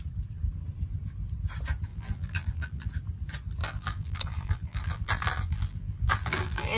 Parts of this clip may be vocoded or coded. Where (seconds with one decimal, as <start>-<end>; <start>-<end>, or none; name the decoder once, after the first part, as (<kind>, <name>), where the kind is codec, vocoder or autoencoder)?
1.9-2.9 (vocoder, BigVGAN v2); 3.6-6.8